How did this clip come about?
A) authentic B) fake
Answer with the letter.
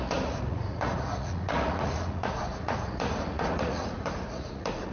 B